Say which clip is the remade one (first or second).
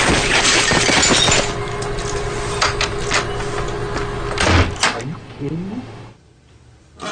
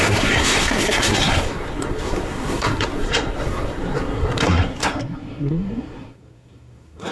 second